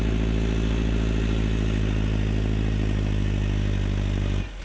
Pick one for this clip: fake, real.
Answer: real